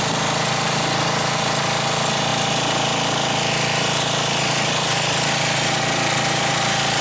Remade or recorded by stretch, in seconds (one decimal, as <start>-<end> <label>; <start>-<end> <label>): 0.0-7.0 recorded